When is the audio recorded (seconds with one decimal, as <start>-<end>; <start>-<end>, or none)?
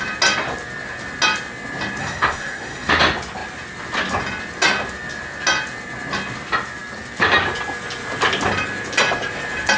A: 0.0-2.0; 2.9-9.8